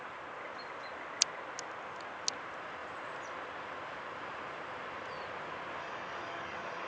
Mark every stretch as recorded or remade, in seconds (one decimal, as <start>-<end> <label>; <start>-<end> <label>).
0.0-5.8 recorded; 5.8-6.9 remade